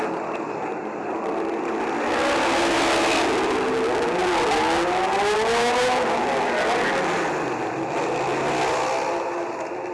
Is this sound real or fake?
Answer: real